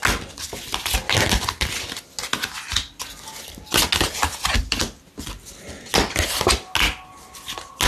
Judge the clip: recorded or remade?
recorded